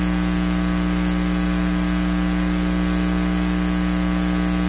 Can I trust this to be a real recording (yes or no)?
yes